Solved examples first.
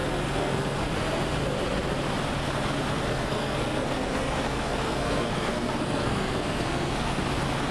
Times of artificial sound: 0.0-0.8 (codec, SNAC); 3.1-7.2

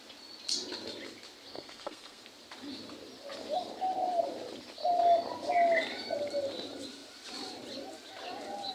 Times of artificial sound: 1.5-2.2 (codec, SNAC)